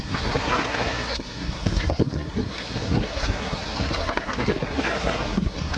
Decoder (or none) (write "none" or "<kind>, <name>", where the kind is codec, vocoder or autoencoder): codec, SNAC